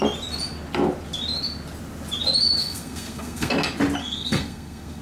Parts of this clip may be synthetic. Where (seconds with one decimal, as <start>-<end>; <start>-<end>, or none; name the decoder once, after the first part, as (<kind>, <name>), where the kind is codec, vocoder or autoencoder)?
2.6-3.5 (codec, SNAC); 4.0-5.0